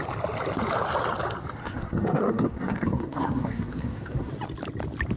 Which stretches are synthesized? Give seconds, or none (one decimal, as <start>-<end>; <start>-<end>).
1.6-4.3